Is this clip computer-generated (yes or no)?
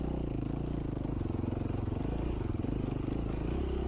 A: no